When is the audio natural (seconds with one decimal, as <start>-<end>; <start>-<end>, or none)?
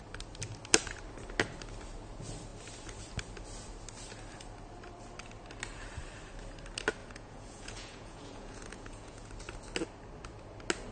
0.0-7.0; 9.3-10.9